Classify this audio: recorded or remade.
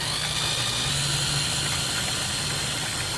recorded